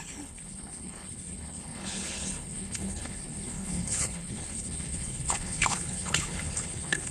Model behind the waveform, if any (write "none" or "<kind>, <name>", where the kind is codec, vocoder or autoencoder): codec, HILCodec